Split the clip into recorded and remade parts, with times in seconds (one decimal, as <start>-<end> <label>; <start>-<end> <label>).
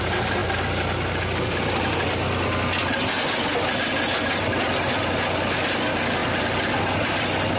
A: 0.0-7.6 recorded